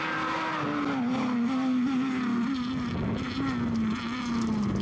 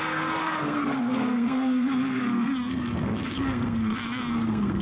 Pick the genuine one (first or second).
first